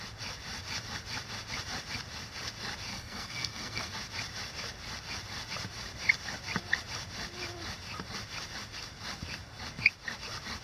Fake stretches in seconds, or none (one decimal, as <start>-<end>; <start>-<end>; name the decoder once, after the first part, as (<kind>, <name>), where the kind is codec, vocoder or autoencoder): 2.9-3.9 (codec, SNAC)